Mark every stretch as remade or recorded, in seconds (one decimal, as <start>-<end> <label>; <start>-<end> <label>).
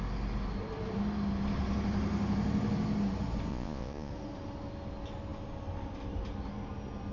0.0-3.5 recorded; 3.5-4.1 remade; 4.1-7.1 recorded